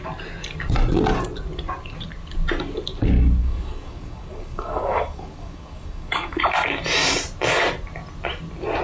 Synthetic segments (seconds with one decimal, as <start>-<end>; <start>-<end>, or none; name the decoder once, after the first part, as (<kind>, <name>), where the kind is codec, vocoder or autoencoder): 3.4-6.4 (codec, DAC)